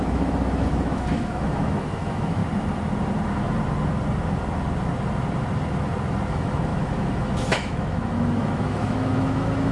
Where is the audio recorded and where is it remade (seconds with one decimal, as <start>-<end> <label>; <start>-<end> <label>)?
0.0-2.4 remade; 2.4-6.3 recorded; 6.3-9.7 remade